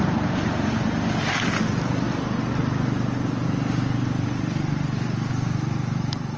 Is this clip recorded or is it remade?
recorded